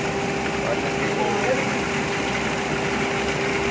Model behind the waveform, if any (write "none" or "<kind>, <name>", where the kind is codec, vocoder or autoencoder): none